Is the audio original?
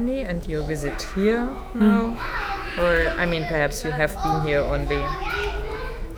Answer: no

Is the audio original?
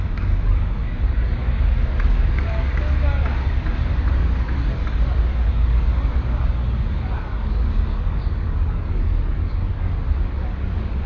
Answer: no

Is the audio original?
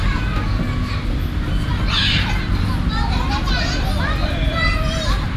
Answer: yes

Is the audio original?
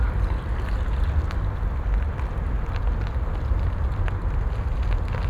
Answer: yes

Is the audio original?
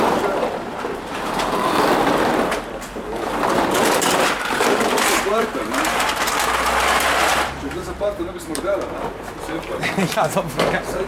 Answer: no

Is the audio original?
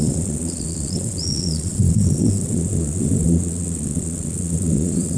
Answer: no